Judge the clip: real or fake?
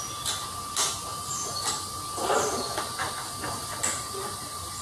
real